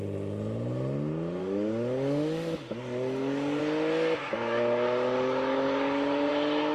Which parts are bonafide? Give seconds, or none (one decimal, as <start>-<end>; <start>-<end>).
0.0-1.4; 3.6-4.2; 6.3-6.7